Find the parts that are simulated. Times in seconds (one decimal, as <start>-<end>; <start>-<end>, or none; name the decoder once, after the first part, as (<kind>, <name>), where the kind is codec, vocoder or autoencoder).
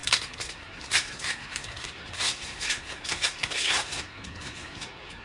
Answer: 0.0-5.2 (codec, SNAC)